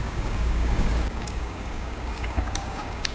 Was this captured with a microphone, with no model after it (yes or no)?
no